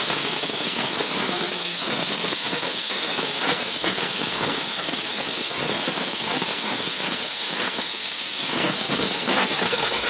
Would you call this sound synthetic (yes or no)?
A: yes